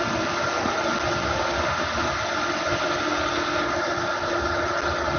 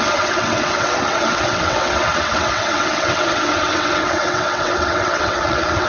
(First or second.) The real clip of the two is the first